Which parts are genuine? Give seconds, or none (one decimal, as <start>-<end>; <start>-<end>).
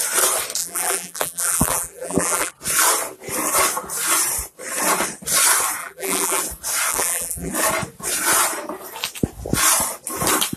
0.0-0.6; 2.5-5.8; 6.4-6.9; 7.5-10.6